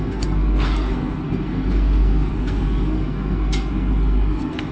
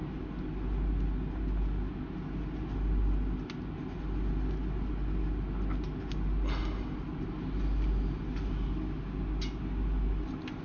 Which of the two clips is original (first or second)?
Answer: second